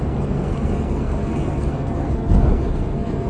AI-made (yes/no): yes